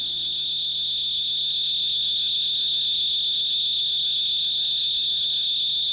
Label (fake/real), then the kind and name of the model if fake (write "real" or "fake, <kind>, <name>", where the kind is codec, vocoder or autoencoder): real